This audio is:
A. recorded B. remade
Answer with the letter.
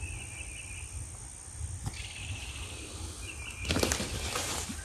A